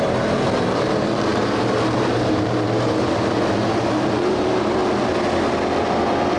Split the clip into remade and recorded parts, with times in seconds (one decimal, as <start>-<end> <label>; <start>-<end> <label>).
0.0-4.8 remade; 4.8-6.4 recorded